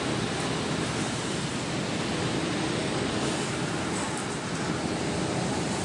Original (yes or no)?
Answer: yes